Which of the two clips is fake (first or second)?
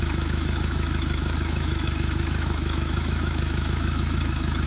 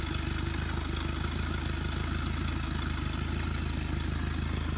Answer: first